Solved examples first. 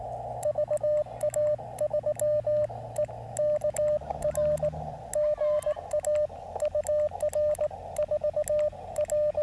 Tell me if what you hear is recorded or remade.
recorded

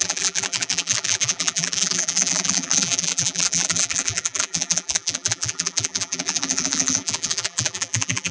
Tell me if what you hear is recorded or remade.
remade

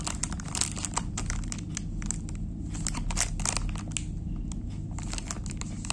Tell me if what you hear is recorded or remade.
recorded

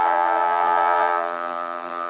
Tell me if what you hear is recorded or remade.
remade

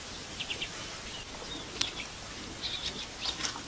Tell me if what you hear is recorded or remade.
recorded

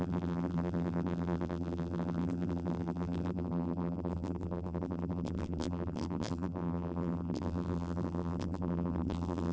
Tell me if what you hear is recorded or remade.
remade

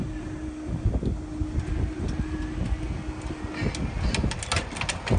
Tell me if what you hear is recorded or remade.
recorded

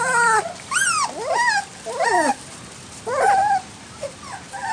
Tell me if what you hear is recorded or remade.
remade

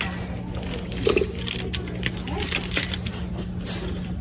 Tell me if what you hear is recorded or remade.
recorded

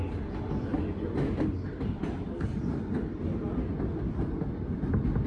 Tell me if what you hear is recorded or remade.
recorded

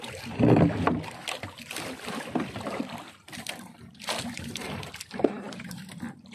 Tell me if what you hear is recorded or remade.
remade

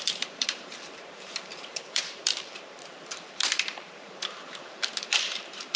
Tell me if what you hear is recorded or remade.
remade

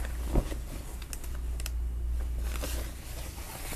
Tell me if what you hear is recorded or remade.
recorded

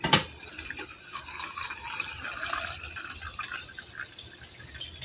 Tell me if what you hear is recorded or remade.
remade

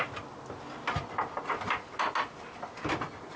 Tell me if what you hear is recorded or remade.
recorded